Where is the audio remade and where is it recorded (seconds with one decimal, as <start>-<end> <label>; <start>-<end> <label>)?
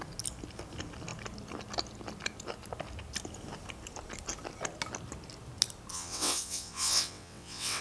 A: 0.0-5.9 recorded; 5.9-7.8 remade